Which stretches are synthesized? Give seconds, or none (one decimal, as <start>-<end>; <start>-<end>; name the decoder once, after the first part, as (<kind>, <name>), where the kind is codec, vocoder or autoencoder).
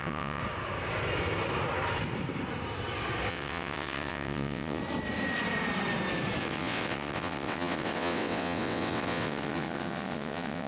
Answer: 0.0-0.4 (vocoder, WaveNeXt); 3.3-4.8; 6.4-10.7